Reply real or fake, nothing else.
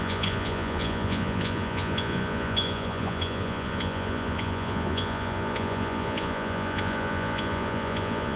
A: fake